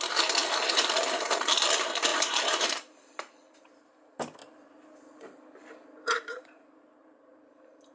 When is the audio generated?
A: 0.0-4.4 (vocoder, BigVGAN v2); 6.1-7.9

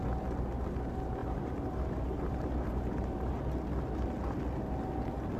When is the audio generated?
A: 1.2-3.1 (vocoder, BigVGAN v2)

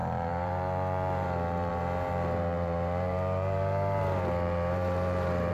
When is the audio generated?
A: 0.0-5.5 (vocoder, BigVGAN v2)

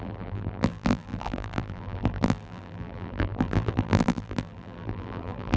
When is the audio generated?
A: 0.0-5.6 (vocoder, BigVGAN v2)

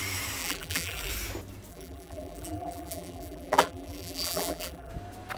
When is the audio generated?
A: 0.4-1.1 (vocoder, BigVGAN v2); 1.7-4.9

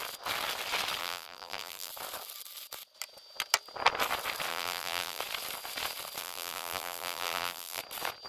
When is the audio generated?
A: 1.0-1.9 (vocoder, BigVGAN v2); 4.5-5.2; 6.2-7.8

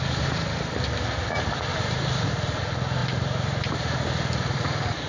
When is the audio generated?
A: 1.7-2.6 (vocoder, BigVGAN v2); 3.0-5.1

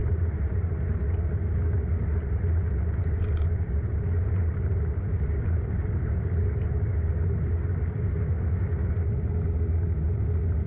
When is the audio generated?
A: 0.0-0.5 (vocoder, BigVGAN v2); 2.1-7.1